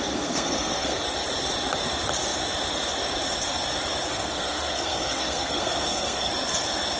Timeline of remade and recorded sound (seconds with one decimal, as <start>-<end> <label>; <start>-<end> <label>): 0.0-1.0 remade; 1.0-4.1 recorded; 4.1-6.3 remade; 6.3-7.0 recorded